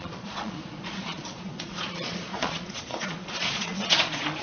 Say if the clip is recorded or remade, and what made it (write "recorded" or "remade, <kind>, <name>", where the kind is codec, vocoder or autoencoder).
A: remade, vocoder, Vocos